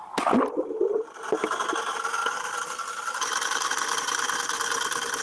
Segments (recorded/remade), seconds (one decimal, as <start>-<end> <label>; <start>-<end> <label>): 0.0-2.2 recorded; 2.2-3.7 remade; 3.7-5.2 recorded